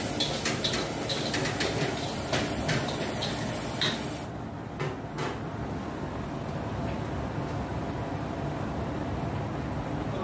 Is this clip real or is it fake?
real